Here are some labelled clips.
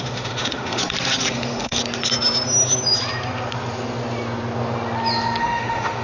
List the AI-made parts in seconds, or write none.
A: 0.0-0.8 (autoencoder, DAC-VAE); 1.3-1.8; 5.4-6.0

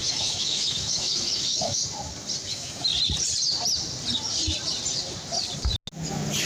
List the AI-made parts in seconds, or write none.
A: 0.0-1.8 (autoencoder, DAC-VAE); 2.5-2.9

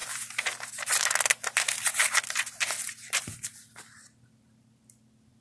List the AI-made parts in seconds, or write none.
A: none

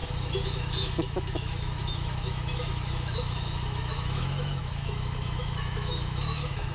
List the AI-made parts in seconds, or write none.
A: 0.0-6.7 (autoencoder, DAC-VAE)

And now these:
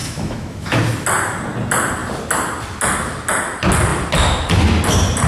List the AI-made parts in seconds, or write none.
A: 0.0-0.8 (autoencoder, DAC-VAE)

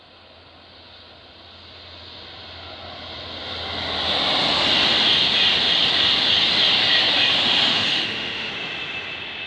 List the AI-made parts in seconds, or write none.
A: 7.7-8.5 (autoencoder, DAC-VAE)

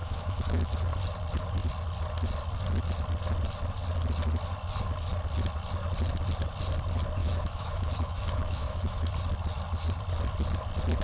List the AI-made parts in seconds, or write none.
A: 0.0-0.7 (autoencoder, DAC-VAE); 7.2-9.1